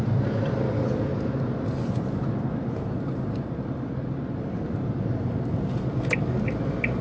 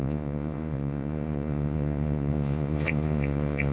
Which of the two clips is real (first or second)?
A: first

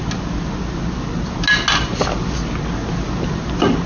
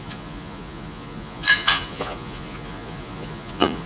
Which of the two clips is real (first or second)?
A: first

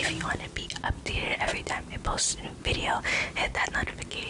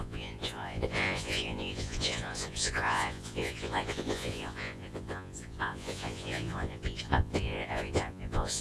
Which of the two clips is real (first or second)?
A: first